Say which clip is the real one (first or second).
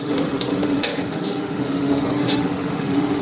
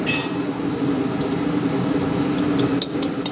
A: second